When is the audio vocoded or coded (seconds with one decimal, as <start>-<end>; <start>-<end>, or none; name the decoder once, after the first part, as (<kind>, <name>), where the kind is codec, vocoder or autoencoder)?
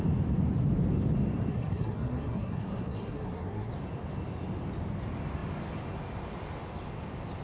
1.5-3.7 (codec, SNAC)